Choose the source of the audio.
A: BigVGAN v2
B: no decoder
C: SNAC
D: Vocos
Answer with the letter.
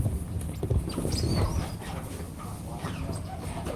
B